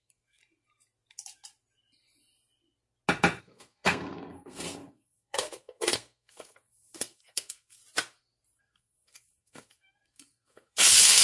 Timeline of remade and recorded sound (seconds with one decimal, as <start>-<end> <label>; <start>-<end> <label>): 0.0-0.4 remade; 0.4-3.4 recorded; 3.4-7.8 remade; 7.8-8.6 recorded; 8.6-11.2 remade